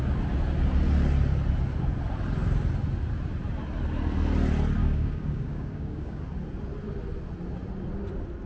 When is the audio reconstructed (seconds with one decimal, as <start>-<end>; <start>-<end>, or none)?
4.8-6.2